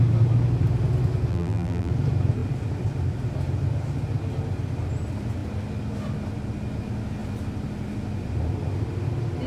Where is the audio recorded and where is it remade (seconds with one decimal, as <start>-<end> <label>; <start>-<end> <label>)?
0.0-1.3 recorded; 1.3-1.9 remade; 1.9-9.5 recorded